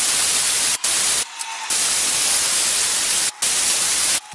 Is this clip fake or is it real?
real